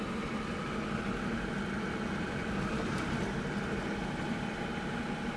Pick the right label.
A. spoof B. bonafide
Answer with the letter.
B